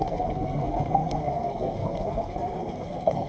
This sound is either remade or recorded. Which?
remade